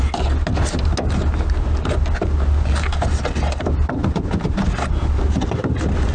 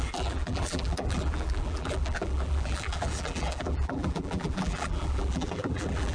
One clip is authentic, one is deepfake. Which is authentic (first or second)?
first